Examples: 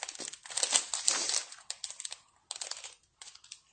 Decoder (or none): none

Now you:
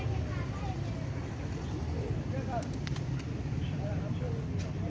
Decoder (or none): none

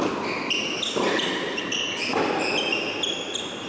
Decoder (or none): none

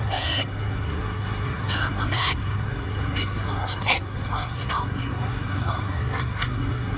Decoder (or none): codec, SNAC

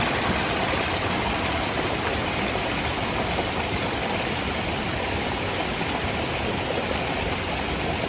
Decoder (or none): none